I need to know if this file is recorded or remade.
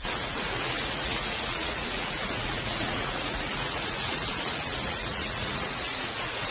remade